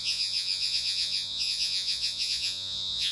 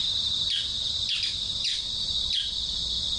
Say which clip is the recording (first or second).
second